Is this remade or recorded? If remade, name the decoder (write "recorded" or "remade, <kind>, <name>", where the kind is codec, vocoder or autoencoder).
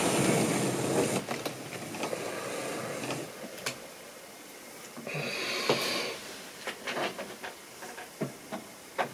recorded